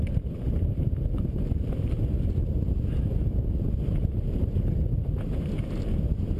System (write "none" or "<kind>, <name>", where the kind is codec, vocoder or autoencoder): none